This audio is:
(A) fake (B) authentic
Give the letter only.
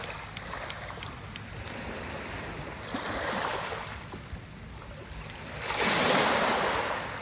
B